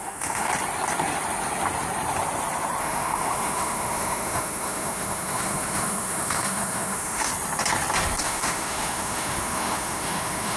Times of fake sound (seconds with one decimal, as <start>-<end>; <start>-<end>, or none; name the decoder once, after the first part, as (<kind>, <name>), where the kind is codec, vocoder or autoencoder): 0.0-0.5 (autoencoder, DAC-VAE); 2.8-7.3; 8.2-10.6